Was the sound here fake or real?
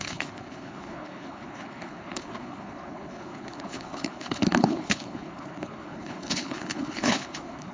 fake